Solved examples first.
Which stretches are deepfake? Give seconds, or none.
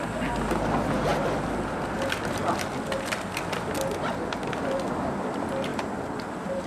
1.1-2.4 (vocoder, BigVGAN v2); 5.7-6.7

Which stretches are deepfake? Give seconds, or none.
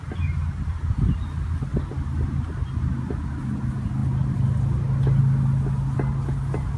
none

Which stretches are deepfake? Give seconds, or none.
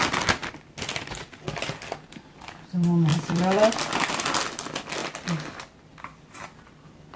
3.1-3.7 (vocoder, BigVGAN v2)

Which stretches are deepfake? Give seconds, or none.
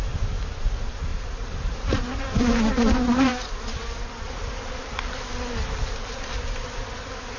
1.1-3.4 (vocoder, BigVGAN v2)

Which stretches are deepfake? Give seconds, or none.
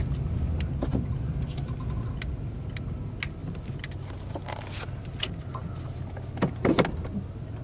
3.4-4.3 (vocoder, BigVGAN v2)